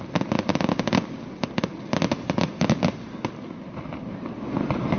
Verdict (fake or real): real